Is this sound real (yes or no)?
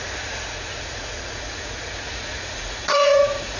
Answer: no